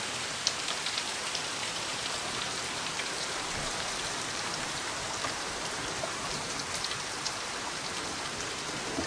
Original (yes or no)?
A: no